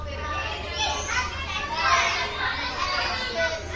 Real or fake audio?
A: real